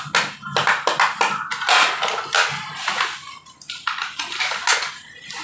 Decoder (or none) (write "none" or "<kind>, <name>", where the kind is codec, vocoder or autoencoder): none